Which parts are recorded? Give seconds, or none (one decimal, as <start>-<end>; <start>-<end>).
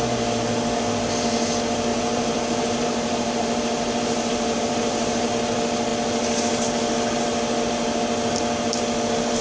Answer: 0.0-1.9; 5.3-9.4